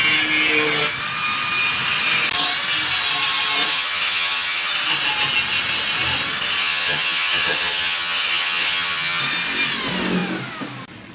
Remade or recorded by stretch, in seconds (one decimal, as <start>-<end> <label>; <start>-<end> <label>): 0.0-3.7 recorded; 3.7-4.7 remade; 4.7-6.6 recorded; 6.6-9.2 remade; 9.2-11.1 recorded